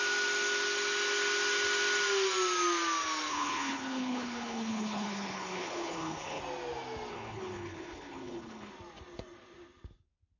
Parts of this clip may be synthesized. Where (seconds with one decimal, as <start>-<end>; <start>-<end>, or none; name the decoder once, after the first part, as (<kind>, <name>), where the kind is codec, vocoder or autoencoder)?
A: 3.3-6.4 (codec, HILCodec); 7.1-8.7